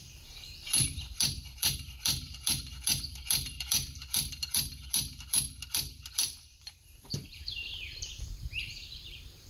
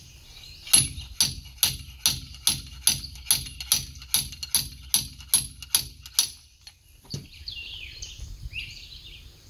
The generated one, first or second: first